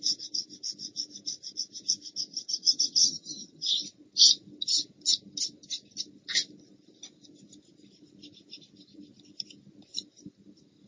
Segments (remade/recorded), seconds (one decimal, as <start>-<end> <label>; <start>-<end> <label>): 0.0-2.3 recorded; 2.3-3.8 remade; 3.8-10.9 recorded